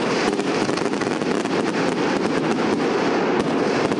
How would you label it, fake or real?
real